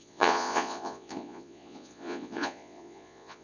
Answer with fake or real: fake